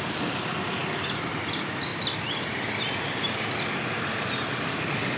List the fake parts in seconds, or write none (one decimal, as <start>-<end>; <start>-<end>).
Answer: none